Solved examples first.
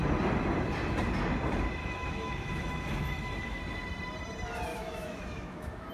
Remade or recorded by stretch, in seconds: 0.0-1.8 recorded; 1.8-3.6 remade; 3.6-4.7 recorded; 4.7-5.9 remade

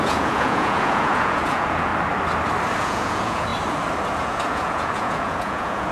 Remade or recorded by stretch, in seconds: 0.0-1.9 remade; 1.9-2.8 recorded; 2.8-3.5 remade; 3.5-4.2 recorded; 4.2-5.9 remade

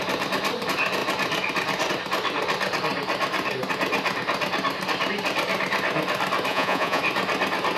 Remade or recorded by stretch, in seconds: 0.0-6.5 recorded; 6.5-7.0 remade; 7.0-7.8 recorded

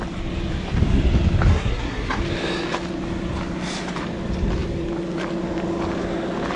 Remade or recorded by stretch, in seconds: 0.0-1.5 recorded; 1.5-2.2 remade; 2.2-6.6 recorded